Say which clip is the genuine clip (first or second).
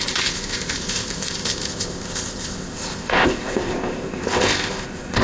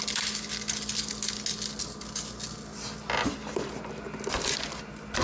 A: second